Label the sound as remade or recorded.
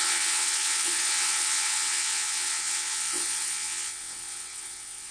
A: remade